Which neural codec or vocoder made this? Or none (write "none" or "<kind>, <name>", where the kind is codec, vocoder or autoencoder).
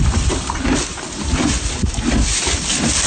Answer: none